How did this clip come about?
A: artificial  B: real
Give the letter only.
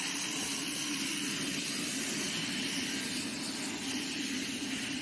B